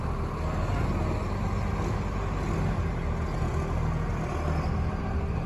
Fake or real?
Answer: real